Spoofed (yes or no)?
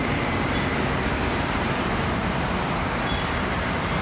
yes